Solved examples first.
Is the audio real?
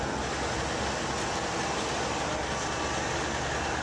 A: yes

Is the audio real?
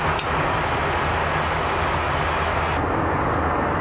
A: yes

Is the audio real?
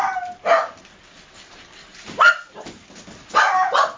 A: yes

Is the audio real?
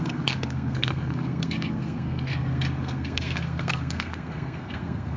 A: no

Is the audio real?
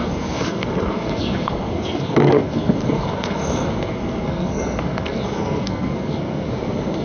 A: no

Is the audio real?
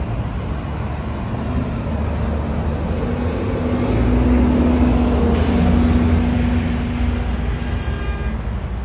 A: yes